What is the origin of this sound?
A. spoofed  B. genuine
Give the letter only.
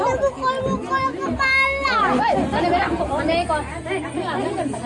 B